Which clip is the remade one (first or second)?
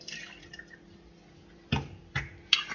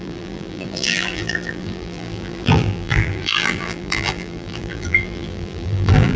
second